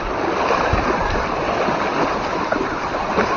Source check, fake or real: real